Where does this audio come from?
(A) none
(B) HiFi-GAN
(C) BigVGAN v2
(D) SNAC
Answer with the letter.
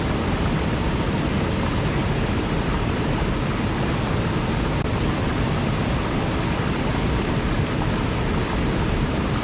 A